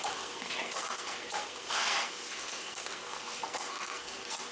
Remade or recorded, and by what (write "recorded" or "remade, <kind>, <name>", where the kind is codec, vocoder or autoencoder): remade, codec, SNAC